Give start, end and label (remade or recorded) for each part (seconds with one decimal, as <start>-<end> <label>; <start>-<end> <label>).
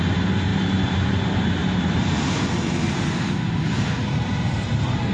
0.0-0.5 recorded; 0.5-1.2 remade; 1.2-1.6 recorded; 1.6-5.1 remade